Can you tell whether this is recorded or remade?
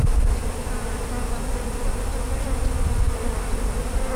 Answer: recorded